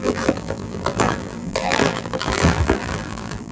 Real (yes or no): no